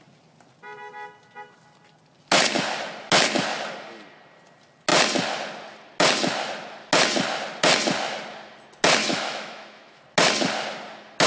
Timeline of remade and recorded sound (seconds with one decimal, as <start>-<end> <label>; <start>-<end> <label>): 0.0-9.0 recorded; 9.0-10.0 remade; 10.0-11.3 recorded